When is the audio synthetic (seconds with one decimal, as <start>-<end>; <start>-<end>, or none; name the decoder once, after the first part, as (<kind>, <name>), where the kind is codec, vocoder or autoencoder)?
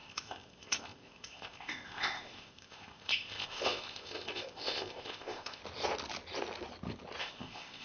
0.0-5.6 (codec, ZipCodec); 7.2-7.8